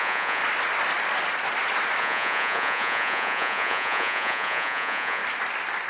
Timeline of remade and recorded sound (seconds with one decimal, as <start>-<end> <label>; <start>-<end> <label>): 0.0-0.4 remade; 0.4-2.0 recorded; 2.0-5.2 remade; 5.2-5.9 recorded